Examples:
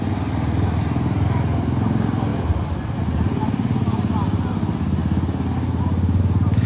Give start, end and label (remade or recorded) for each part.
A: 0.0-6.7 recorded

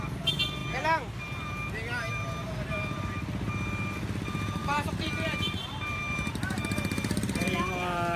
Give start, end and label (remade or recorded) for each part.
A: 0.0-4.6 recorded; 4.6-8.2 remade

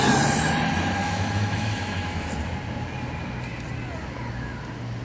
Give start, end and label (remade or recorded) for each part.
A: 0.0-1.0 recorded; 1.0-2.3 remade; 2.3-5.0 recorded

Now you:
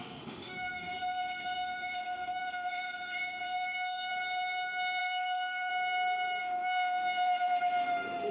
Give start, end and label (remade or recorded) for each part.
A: 0.0-4.1 remade; 4.1-5.0 recorded; 5.0-5.7 remade; 5.7-6.4 recorded; 6.4-8.3 remade

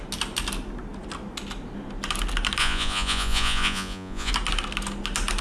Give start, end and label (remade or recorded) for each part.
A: 0.0-2.6 recorded; 2.6-4.3 remade; 4.3-5.4 recorded